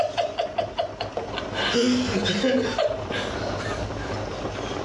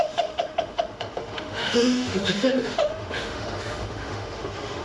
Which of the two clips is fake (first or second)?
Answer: second